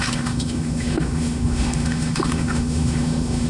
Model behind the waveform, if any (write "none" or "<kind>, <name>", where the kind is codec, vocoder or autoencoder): autoencoder, DAC-VAE